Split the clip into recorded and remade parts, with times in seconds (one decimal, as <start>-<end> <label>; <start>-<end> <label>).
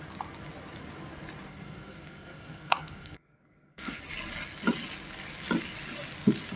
0.0-1.5 recorded; 1.5-4.0 remade; 4.0-6.6 recorded